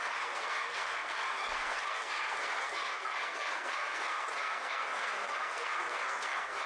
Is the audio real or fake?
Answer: fake